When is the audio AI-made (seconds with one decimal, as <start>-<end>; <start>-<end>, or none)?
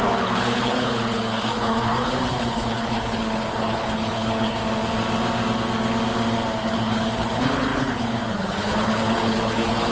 0.0-4.6; 6.6-9.9